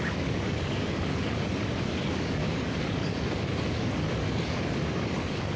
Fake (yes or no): yes